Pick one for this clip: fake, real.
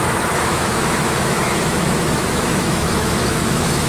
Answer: fake